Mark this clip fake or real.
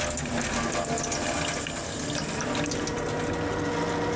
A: real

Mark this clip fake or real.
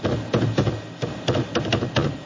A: real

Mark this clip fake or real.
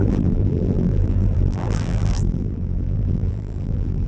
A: fake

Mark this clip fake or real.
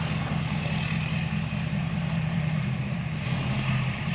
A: fake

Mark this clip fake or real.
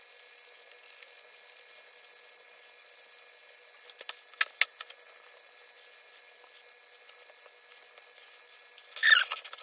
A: real